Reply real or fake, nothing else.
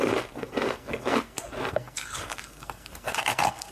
fake